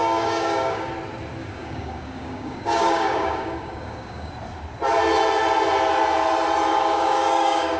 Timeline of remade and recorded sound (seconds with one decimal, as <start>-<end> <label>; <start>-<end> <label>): 0.0-0.9 remade; 0.9-1.4 recorded; 1.4-4.3 remade; 4.3-6.7 recorded; 6.7-7.8 remade